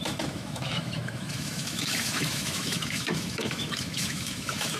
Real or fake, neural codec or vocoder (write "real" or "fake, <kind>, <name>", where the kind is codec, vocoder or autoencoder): fake, autoencoder, DAC-VAE